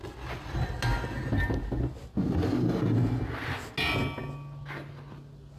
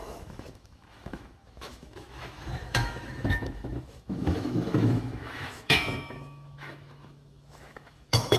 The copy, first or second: second